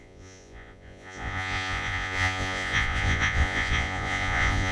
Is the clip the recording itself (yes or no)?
no